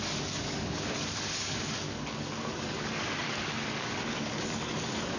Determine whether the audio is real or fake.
fake